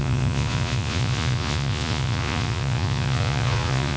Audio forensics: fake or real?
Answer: fake